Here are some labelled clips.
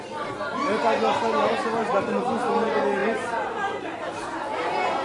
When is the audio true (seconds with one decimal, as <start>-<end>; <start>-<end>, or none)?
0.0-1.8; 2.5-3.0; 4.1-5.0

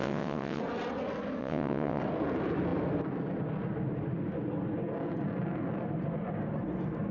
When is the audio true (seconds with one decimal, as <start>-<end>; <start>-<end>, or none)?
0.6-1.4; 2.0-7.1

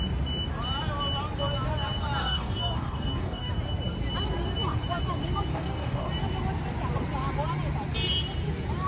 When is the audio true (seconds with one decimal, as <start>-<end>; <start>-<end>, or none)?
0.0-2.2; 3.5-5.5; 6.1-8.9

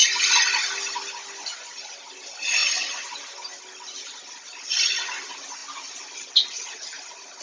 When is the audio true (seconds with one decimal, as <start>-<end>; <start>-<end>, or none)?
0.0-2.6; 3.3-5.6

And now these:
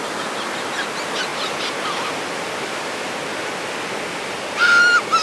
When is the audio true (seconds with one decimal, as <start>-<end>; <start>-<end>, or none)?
0.0-5.2

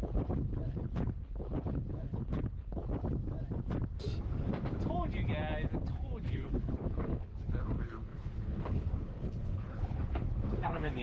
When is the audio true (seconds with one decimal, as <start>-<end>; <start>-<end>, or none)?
2.8-6.3

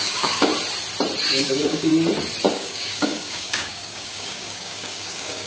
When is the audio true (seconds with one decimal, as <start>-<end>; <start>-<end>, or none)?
0.5-1.3; 1.9-2.5